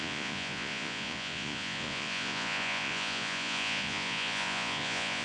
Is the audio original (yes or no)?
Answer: no